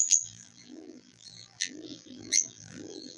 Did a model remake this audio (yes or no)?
yes